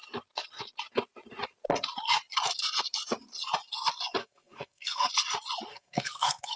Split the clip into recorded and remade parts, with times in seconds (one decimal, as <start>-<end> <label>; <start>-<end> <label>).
0.0-4.2 recorded; 4.2-5.1 remade; 5.1-5.7 recorded; 5.7-6.6 remade